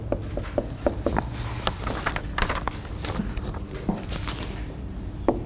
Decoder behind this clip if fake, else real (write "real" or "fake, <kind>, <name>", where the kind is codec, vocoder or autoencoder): real